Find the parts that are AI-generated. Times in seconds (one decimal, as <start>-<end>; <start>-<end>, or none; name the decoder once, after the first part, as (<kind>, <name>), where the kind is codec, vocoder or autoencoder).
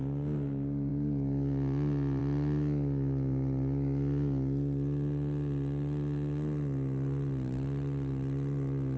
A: none